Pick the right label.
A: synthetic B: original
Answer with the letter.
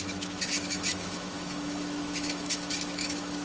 A